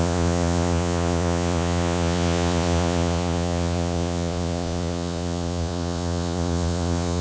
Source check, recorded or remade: remade